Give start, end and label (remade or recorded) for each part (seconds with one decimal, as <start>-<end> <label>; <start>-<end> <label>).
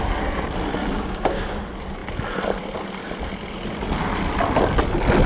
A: 0.0-0.8 recorded; 0.8-1.6 remade; 1.6-5.3 recorded